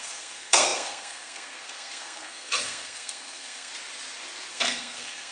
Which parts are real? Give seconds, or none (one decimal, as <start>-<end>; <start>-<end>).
3.7-4.5

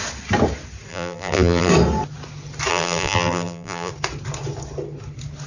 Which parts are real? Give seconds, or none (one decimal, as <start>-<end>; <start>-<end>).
0.0-0.9; 1.7-2.7; 3.9-5.5

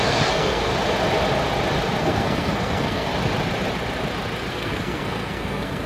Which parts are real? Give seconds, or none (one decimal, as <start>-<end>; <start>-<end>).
0.7-2.0; 3.1-4.5

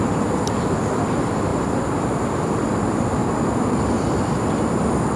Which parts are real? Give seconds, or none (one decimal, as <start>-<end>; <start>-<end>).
none

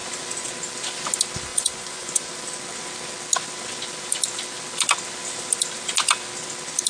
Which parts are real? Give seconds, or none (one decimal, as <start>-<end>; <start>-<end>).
0.0-1.5; 2.3-6.9

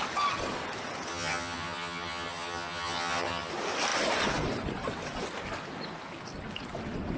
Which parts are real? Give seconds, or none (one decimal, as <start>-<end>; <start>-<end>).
0.0-1.1; 3.5-7.2

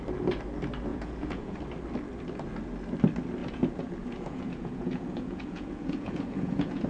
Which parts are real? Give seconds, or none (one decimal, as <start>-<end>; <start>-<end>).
0.0-0.9; 1.6-3.4